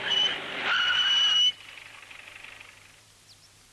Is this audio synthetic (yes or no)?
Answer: yes